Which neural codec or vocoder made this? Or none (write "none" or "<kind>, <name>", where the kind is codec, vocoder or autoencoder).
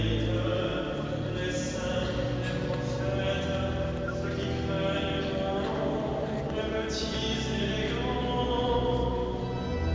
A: none